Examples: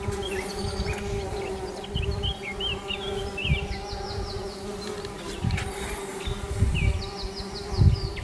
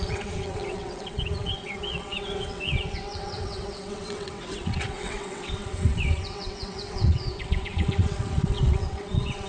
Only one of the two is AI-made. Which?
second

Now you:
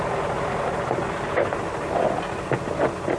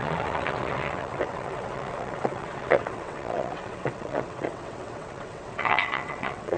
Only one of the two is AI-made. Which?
second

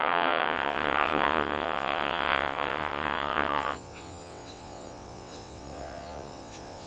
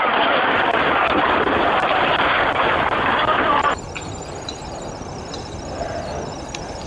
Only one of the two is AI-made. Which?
first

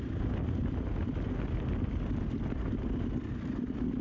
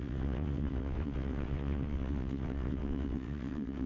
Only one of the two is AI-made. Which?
second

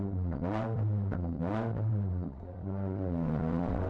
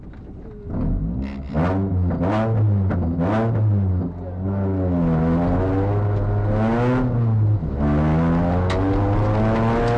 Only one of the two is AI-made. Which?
first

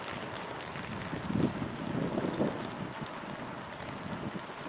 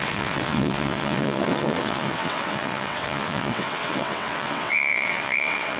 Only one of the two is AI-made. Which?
second